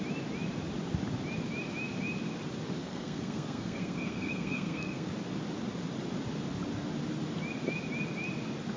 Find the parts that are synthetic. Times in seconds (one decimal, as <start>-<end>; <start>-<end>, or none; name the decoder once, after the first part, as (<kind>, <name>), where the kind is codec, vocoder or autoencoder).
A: 2.8-5.1 (codec, SNAC)